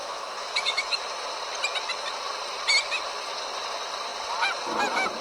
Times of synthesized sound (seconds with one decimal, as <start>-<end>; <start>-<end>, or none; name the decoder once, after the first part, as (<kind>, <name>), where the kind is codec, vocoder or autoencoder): 0.0-1.0 (autoencoder, DAC-VAE)